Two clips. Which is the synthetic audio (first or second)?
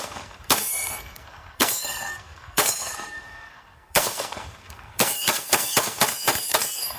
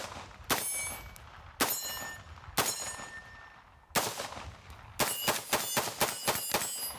first